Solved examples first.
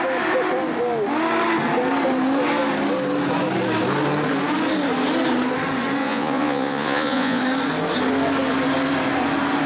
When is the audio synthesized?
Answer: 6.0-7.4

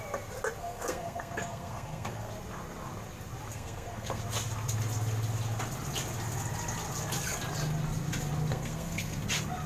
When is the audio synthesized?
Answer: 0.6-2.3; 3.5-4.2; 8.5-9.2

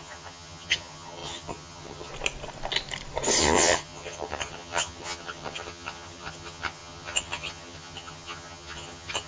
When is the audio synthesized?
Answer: 0.0-2.1; 3.4-9.3

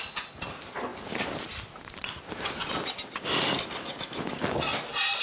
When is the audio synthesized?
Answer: none